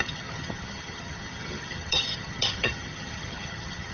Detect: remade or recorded remade